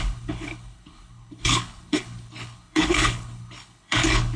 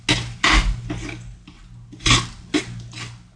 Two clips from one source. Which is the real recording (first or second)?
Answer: second